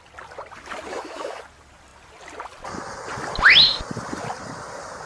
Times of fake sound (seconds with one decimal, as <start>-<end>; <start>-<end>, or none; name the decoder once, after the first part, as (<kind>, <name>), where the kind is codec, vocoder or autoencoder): 0.9-1.4 (autoencoder, DAC-VAE)